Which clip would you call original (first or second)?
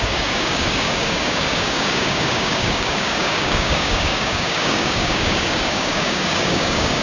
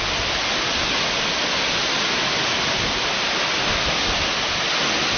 second